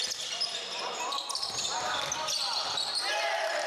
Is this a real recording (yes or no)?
yes